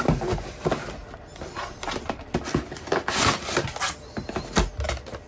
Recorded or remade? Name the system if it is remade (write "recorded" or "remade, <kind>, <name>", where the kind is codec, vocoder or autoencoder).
recorded